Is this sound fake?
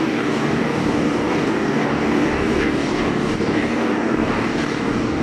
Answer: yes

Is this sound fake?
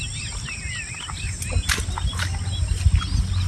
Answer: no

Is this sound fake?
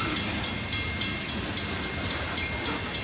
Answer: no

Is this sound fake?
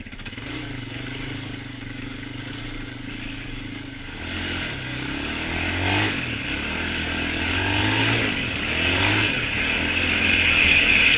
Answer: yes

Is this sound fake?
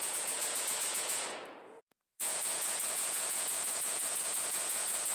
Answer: yes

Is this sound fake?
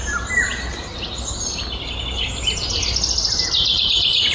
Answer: no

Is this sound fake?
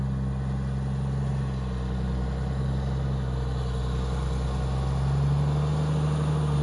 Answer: no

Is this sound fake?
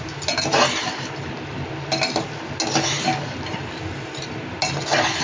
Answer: no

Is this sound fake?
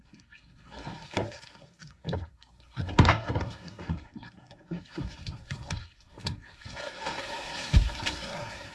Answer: yes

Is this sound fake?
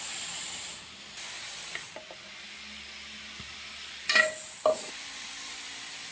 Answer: no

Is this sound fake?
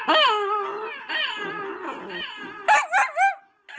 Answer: no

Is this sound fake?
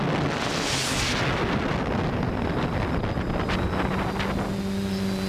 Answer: no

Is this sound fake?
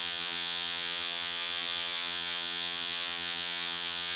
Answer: yes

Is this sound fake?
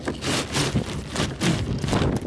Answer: no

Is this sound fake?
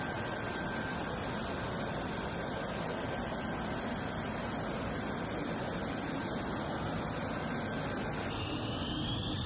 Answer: no